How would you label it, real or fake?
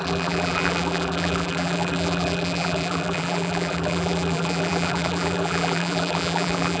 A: fake